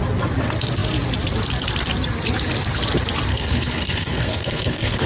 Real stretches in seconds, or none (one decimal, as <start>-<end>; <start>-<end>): 0.0-3.3